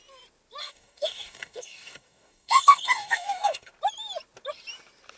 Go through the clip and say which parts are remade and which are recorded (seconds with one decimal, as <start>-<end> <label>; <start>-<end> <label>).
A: 0.0-0.6 recorded; 0.6-3.7 remade; 3.7-5.2 recorded